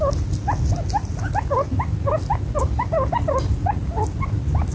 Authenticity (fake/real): real